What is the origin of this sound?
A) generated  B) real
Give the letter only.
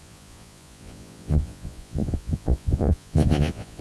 A